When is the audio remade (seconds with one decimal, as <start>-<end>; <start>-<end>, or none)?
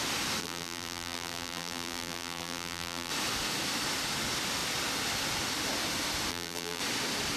0.4-3.1; 6.3-6.8